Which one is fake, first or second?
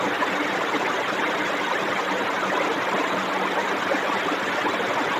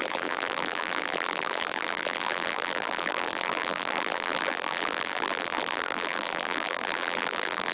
second